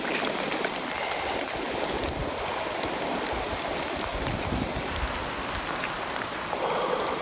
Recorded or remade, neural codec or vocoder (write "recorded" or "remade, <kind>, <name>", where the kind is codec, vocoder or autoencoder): recorded